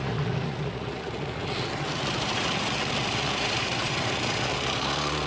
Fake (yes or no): yes